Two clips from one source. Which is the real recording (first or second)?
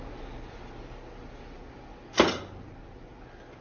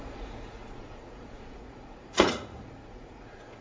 first